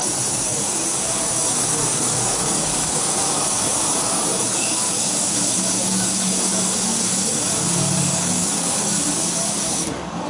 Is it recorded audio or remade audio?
remade